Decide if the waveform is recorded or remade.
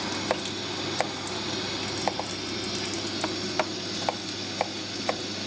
recorded